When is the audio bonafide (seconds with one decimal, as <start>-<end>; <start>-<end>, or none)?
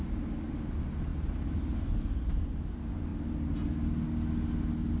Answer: 1.1-2.5; 3.1-5.0